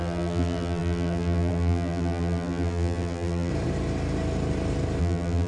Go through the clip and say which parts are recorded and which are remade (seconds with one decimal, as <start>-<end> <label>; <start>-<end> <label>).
0.0-3.5 remade; 3.5-5.0 recorded; 5.0-5.5 remade